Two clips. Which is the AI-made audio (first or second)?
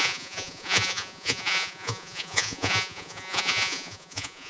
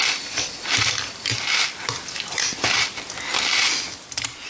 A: first